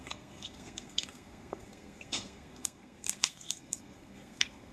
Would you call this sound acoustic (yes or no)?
no